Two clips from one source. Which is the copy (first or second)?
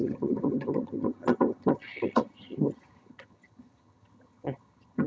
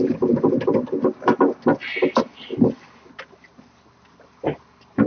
first